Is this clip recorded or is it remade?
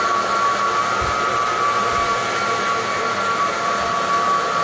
recorded